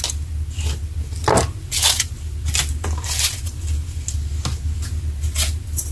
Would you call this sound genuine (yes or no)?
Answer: yes